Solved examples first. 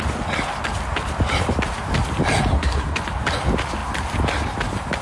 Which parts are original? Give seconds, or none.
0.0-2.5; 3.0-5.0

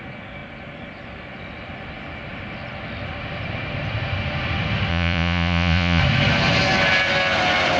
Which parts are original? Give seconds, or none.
0.0-4.9; 6.0-7.8

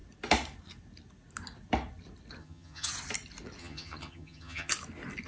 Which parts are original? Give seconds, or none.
0.0-2.4; 2.9-3.6; 4.7-5.3